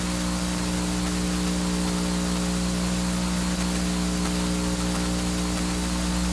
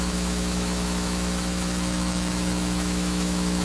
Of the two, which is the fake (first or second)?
second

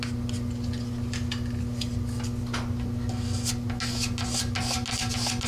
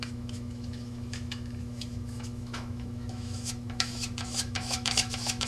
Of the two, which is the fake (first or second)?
second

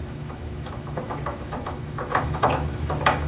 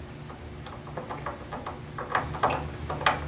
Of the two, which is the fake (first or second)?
first